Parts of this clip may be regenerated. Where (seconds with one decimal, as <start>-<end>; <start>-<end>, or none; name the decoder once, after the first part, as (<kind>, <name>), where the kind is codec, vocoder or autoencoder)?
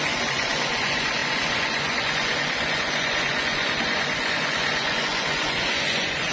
0.0-6.3 (vocoder, Vocos)